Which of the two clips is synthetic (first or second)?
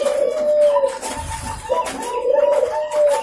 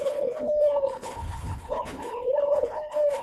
second